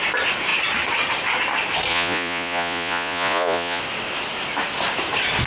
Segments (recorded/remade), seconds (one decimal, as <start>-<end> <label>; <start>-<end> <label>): 0.0-1.9 recorded; 1.9-3.8 remade; 3.8-5.5 recorded